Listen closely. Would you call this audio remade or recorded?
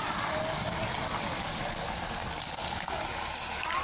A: recorded